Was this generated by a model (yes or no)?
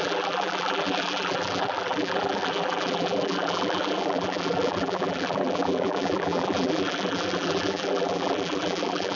yes